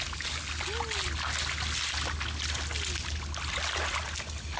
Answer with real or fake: real